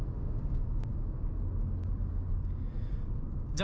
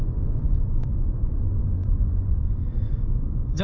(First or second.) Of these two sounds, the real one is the first